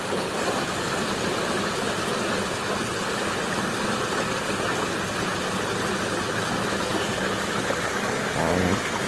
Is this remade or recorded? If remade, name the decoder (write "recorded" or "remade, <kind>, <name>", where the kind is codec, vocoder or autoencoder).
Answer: recorded